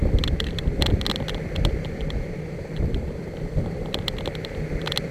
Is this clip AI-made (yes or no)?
no